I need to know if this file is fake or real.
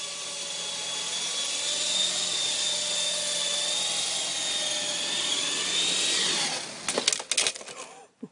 real